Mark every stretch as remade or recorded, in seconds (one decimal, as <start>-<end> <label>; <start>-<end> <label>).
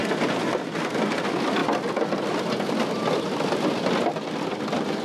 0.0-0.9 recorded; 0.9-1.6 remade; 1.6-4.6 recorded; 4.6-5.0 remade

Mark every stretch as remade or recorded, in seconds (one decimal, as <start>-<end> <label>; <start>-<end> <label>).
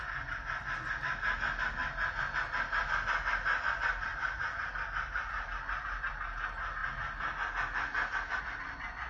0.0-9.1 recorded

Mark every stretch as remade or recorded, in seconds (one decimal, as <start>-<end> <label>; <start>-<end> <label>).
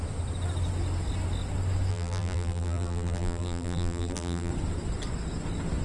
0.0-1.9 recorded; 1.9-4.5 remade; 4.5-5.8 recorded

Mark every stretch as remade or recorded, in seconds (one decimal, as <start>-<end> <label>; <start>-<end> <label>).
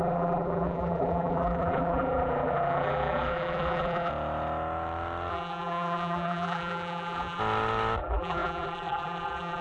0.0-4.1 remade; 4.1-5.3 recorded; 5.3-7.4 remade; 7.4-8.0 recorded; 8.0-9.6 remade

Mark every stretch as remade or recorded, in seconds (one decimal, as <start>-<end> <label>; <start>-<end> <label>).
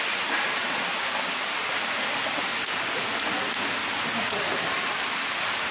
0.0-0.6 remade; 0.6-2.0 recorded; 2.0-2.5 remade; 2.5-3.9 recorded; 3.9-5.7 remade